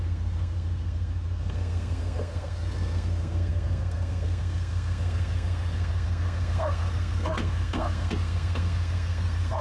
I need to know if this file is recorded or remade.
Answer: remade